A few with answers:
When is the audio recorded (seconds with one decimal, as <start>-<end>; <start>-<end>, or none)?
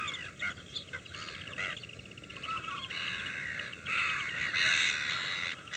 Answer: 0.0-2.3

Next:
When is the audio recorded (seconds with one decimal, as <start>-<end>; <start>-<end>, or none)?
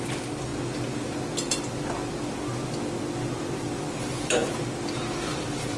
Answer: 0.5-4.0; 4.4-5.2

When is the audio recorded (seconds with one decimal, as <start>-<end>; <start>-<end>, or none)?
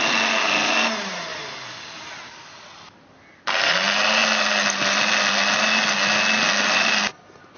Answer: 0.0-1.3; 3.7-7.6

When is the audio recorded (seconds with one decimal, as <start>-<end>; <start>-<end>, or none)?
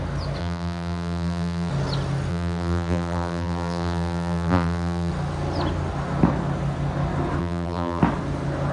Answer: 0.0-0.4; 1.7-2.3; 5.1-7.4; 8.0-8.7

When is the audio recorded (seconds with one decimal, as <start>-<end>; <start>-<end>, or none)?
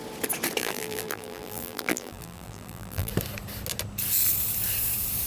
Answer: 0.0-0.6; 3.1-5.3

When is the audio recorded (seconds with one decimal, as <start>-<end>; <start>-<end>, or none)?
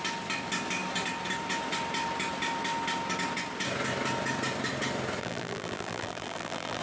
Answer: 0.0-5.2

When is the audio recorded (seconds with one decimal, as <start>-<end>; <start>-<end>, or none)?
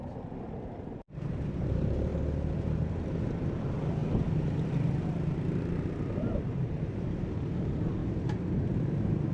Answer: 2.1-2.9